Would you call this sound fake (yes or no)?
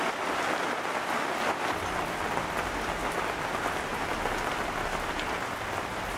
no